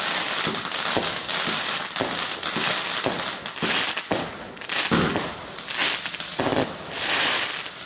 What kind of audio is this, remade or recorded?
recorded